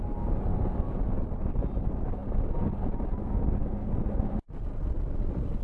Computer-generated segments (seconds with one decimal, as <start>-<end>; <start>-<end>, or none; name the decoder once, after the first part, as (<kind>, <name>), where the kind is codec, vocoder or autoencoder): none